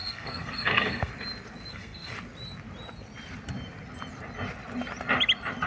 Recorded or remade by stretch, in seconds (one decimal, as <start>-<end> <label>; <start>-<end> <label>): 0.0-1.1 remade; 1.1-1.7 recorded; 1.7-2.1 remade; 2.1-5.7 recorded